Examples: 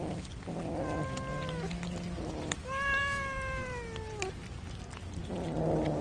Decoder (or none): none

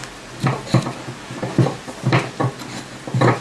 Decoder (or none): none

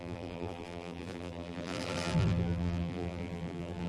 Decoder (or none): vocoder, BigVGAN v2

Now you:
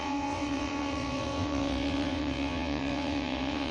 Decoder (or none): vocoder, WaveNeXt